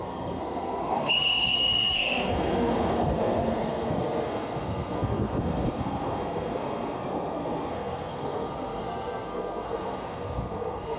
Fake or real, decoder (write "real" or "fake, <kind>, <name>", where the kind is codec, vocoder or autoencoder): fake, codec, SNAC